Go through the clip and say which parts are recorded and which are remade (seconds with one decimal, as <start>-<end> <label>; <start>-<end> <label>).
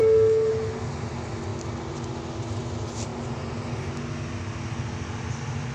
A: 0.0-0.5 remade; 0.5-5.7 recorded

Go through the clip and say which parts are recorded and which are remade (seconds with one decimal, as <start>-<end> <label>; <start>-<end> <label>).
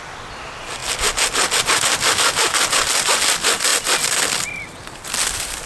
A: 0.0-5.7 recorded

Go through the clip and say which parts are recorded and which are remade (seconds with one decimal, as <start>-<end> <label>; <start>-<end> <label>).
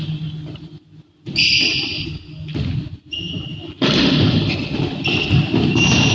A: 0.0-6.1 recorded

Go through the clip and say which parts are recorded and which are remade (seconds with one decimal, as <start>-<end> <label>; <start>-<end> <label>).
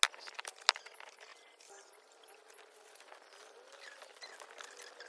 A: 0.0-5.1 recorded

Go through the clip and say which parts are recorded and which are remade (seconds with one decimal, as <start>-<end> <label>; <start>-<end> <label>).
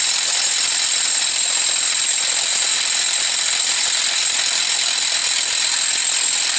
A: 0.0-6.6 recorded